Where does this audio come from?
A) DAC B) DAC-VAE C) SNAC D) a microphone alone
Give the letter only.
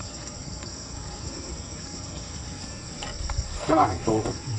C